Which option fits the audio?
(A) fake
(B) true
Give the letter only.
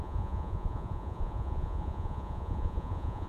A